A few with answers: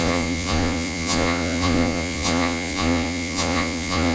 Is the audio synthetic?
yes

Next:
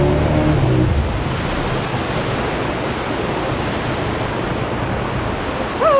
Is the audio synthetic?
no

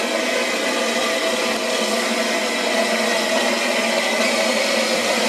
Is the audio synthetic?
no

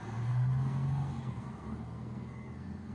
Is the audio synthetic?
yes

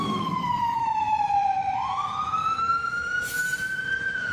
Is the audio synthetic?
yes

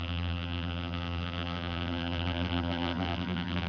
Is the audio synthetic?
yes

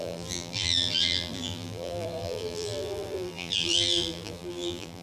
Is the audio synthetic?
yes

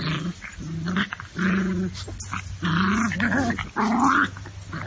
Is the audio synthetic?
no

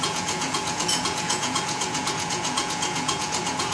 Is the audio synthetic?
yes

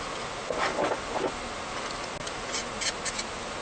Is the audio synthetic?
no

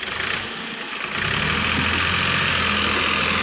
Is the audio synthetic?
no